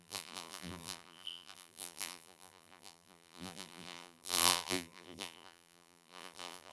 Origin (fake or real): fake